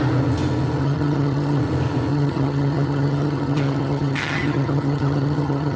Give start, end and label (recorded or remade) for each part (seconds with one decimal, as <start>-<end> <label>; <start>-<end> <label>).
0.0-0.8 recorded; 0.8-1.6 remade; 1.6-2.1 recorded; 2.1-5.8 remade